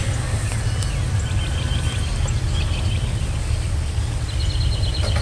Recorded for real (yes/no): yes